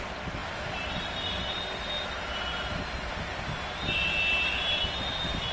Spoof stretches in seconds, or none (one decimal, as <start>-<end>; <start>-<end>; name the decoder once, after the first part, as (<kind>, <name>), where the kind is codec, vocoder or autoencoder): none